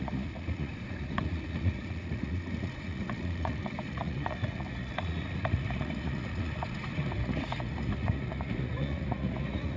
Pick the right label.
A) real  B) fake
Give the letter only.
B